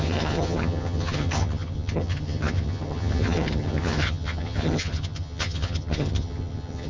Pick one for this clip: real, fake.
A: fake